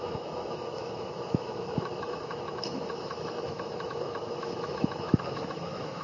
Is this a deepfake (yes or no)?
yes